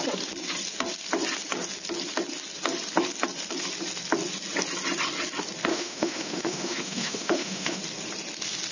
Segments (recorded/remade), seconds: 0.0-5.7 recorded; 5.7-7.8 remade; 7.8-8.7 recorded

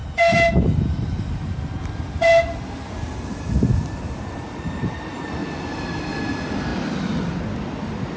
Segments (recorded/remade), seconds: 0.0-8.2 recorded

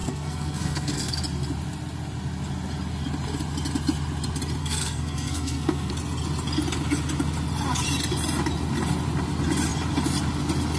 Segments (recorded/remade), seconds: 0.0-1.2 remade; 1.2-4.6 recorded; 4.6-5.9 remade; 5.9-10.8 recorded

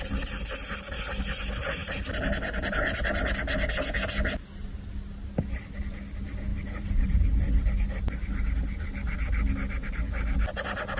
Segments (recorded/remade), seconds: 0.0-6.5 recorded; 6.5-7.2 remade; 7.2-11.0 recorded